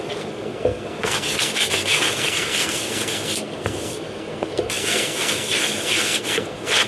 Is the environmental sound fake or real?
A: fake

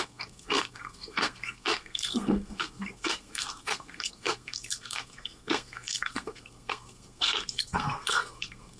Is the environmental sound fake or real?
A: fake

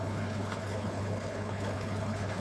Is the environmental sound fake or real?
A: fake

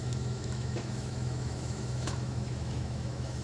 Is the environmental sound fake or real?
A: fake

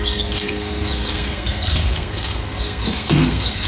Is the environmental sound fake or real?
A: fake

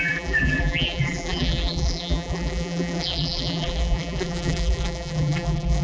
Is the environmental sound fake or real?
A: fake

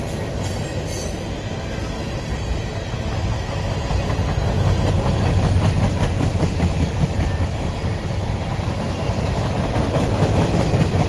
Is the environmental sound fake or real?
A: real